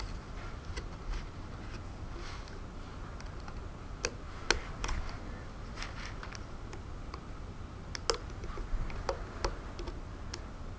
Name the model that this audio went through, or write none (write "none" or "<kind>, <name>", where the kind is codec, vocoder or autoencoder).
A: none